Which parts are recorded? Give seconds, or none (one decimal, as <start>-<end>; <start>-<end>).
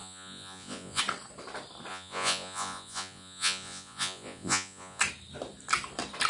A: 1.0-1.9; 5.0-6.3